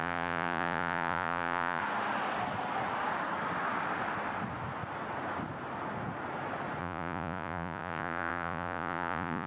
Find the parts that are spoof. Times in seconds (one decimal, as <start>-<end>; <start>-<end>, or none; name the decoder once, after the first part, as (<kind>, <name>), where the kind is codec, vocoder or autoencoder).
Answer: 0.0-1.8 (vocoder, Vocos); 6.8-9.5